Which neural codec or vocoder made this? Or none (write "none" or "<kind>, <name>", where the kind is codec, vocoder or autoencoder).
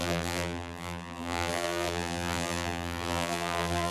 vocoder, BigVGAN v2